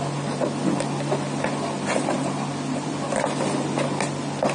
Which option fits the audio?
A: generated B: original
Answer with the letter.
B